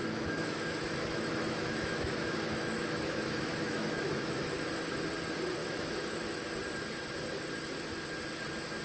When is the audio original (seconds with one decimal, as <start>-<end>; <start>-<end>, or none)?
4.7-5.6; 6.4-8.8